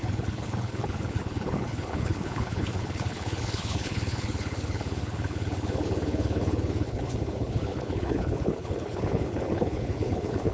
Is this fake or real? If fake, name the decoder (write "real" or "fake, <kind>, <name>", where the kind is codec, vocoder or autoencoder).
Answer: fake, codec, HILCodec